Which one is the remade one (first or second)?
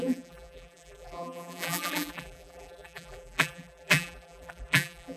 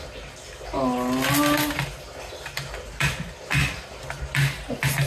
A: first